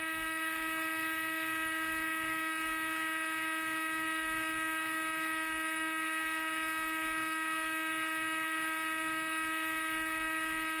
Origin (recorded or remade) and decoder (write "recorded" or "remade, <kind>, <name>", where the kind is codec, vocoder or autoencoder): remade, codec, DAC